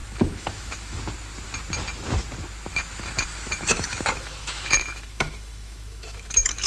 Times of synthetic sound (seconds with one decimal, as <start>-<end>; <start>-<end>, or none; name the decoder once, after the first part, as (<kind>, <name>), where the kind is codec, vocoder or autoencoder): 0.0-1.0 (autoencoder, DAC-VAE); 2.7-6.7